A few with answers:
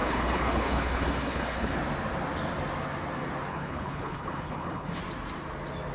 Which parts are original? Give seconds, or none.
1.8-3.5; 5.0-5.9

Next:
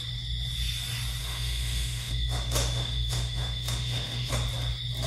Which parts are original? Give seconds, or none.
0.0-1.2; 4.3-5.1